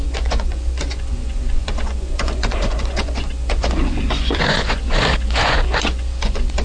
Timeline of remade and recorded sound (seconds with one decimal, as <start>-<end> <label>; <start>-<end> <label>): 0.0-6.6 remade